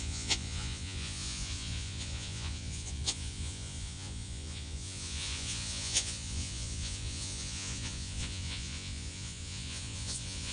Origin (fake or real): fake